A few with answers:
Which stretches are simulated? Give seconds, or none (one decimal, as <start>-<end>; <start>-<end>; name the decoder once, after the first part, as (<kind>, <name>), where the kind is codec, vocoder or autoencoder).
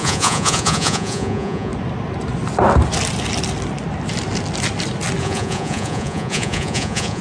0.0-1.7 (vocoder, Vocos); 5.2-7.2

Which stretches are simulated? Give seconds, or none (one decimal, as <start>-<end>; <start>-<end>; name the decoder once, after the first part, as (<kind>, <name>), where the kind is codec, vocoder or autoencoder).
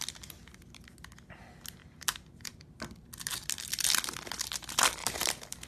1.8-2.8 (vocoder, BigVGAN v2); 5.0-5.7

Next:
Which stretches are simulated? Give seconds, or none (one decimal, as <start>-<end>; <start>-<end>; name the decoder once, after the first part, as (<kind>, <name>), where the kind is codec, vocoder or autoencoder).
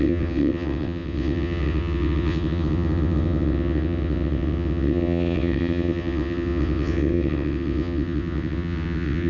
0.0-9.3 (vocoder, WaveNeXt)